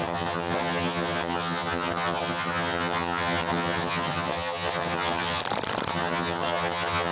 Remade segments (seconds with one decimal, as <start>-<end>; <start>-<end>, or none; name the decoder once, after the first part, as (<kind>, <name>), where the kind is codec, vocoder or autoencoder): 0.0-5.4 (vocoder, HiFi-GAN); 5.9-7.1